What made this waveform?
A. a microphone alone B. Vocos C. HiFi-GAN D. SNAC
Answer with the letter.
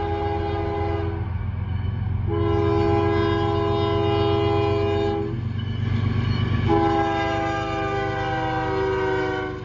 A